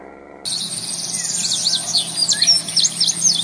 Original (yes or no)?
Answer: yes